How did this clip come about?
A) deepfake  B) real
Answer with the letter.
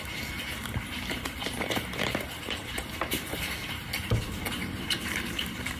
A